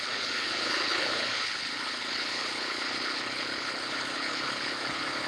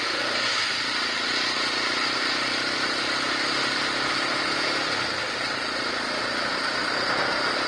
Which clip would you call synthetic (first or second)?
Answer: first